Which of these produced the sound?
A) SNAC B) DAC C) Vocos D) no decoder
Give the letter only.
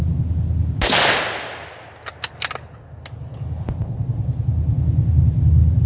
D